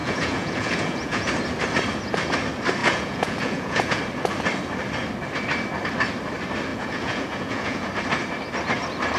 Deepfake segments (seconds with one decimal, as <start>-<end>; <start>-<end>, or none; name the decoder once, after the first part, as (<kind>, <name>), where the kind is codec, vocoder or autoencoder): 0.0-1.3 (vocoder, Vocos); 2.8-4.0; 6.7-7.9